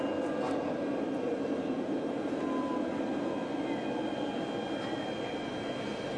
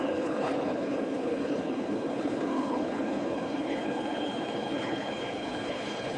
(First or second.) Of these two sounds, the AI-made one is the second